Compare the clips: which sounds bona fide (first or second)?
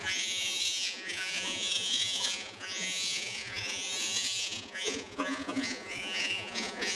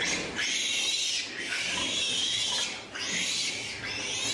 second